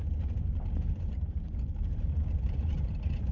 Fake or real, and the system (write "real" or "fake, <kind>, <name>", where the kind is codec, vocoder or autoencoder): real